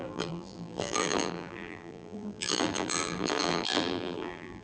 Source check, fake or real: fake